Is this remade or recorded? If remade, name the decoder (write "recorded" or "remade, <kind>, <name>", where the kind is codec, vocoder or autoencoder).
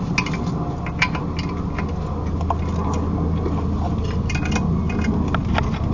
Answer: recorded